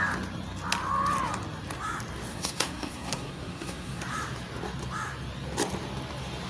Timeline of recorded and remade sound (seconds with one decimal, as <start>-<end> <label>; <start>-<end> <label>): 0.0-2.3 recorded; 2.3-4.0 remade; 4.0-6.5 recorded